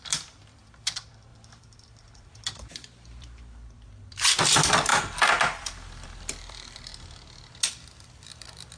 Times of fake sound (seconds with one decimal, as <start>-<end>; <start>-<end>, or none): 0.0-6.9; 7.7-8.8